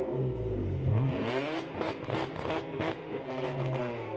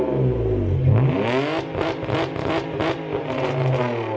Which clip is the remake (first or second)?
first